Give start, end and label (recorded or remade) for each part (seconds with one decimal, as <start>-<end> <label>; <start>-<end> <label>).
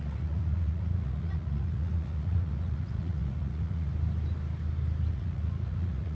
0.0-3.9 remade; 3.9-5.1 recorded; 5.1-6.1 remade